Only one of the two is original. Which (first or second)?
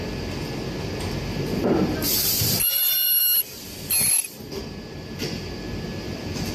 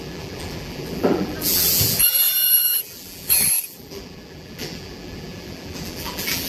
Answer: first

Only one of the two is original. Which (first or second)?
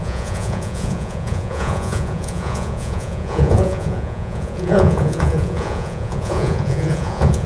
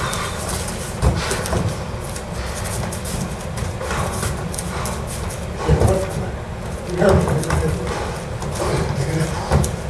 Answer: second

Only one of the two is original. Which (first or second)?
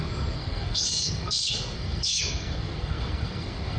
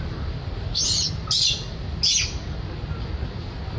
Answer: second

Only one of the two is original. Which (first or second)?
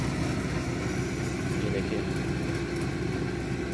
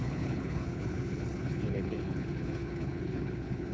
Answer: first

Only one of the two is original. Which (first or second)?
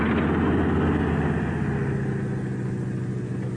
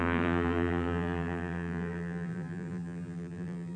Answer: first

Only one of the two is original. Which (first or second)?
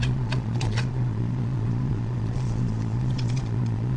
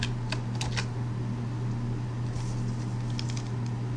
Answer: second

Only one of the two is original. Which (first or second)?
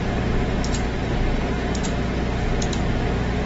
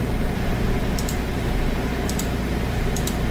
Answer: first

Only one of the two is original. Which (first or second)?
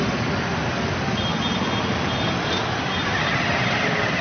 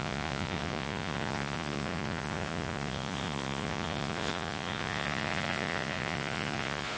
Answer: first